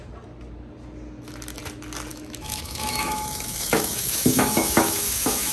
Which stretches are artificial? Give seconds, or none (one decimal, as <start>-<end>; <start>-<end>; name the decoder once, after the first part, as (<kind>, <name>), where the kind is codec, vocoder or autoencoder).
2.1-5.5 (autoencoder, DAC-VAE)